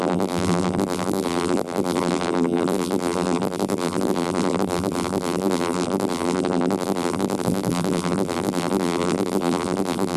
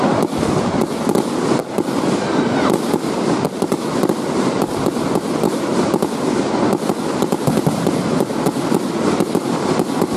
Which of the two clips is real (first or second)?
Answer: second